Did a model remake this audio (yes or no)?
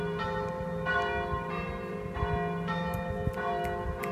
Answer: no